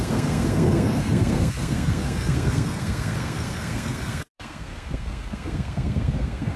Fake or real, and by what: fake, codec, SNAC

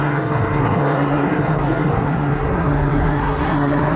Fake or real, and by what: fake, codec, SNAC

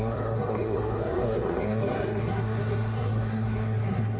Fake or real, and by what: fake, codec, SNAC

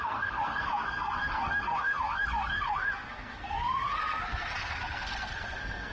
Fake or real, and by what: fake, codec, SNAC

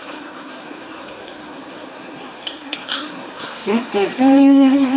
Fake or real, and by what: fake, codec, SNAC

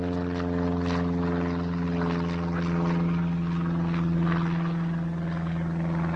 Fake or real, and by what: real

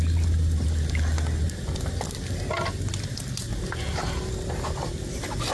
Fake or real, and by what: real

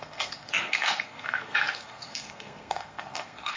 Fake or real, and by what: fake, codec, SNAC